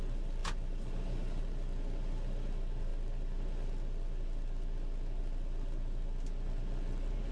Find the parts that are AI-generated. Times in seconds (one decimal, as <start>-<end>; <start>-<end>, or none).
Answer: none